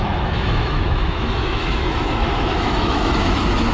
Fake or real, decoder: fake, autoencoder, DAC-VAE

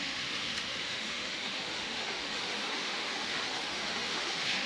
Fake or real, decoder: fake, autoencoder, DAC-VAE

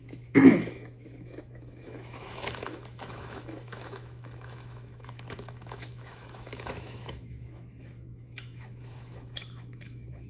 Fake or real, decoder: fake, autoencoder, DAC-VAE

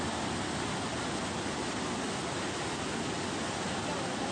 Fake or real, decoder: real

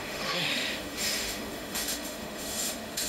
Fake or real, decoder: fake, autoencoder, DAC-VAE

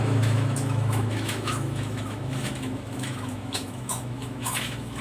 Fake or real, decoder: fake, autoencoder, DAC-VAE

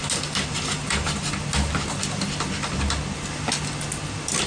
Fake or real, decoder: real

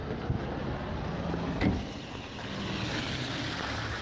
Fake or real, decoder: real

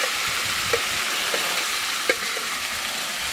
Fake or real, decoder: real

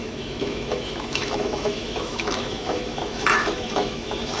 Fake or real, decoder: fake, autoencoder, DAC-VAE